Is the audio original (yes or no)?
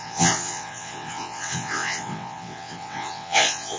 no